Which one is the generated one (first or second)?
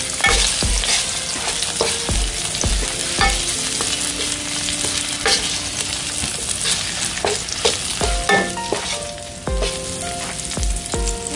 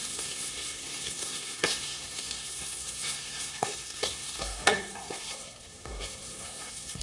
second